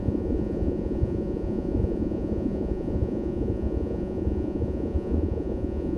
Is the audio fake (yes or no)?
yes